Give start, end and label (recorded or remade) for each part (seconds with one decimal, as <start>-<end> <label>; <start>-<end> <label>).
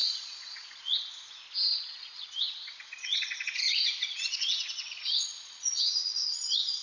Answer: 0.0-1.1 remade; 1.1-1.7 recorded; 1.7-5.8 remade; 5.8-6.2 recorded; 6.2-6.8 remade